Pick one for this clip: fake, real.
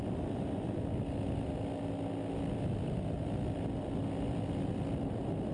real